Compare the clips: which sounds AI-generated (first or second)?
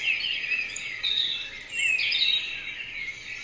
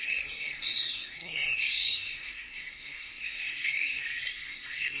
second